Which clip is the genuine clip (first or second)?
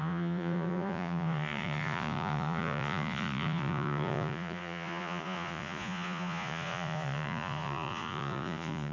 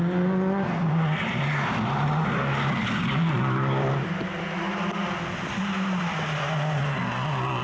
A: second